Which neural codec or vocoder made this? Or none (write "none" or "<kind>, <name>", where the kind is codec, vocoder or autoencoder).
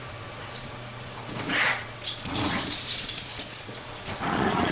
vocoder, Vocos